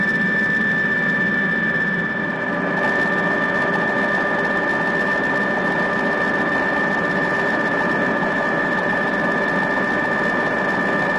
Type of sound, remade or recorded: recorded